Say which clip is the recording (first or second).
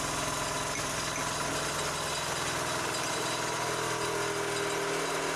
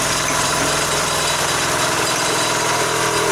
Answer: first